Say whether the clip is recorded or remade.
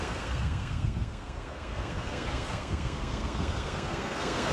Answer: remade